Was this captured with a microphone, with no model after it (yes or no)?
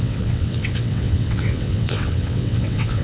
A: no